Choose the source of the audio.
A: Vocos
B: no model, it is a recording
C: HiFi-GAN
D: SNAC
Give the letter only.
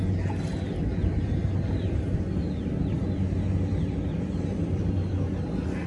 B